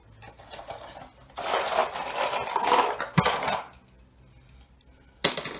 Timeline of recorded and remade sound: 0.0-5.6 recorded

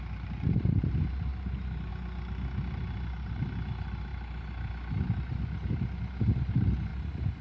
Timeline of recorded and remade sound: 0.0-7.4 recorded

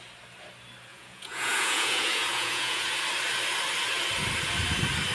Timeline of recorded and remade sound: 0.0-0.9 recorded; 0.9-3.0 remade; 3.0-5.1 recorded